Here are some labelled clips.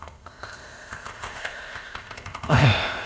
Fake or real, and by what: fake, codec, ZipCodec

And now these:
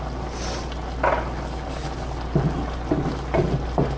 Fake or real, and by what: real